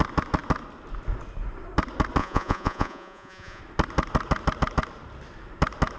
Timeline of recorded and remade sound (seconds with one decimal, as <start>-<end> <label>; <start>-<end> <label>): 0.0-2.2 recorded; 2.2-3.6 remade; 3.6-6.0 recorded